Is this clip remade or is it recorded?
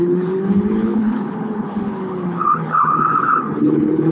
remade